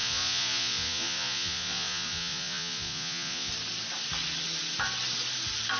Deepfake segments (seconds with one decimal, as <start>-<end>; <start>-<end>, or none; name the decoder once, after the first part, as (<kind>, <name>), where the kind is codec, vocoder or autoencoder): 0.0-3.5 (vocoder, Vocos)